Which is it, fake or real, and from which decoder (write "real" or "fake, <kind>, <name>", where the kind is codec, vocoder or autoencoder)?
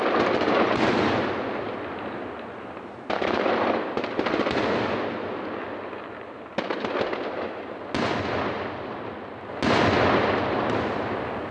real